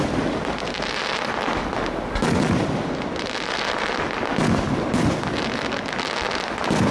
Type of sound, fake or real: real